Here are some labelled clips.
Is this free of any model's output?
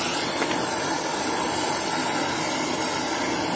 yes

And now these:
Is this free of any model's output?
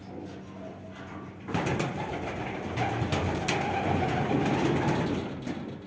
yes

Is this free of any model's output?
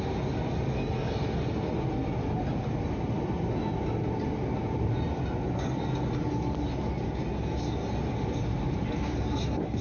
yes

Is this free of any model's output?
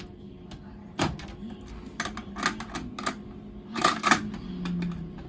yes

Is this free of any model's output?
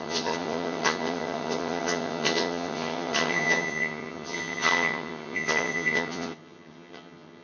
no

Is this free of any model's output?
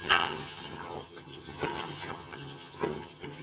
no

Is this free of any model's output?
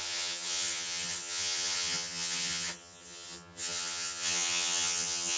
no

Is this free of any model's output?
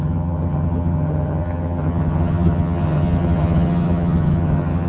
no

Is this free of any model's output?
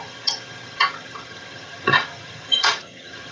no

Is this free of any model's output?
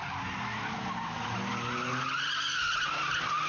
yes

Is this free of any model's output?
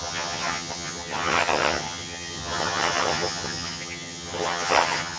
no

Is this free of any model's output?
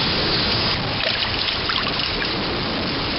yes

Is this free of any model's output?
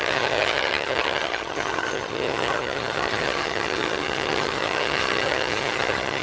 no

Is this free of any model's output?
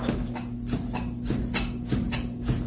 yes